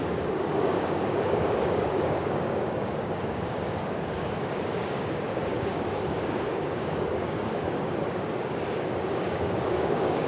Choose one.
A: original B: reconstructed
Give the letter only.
B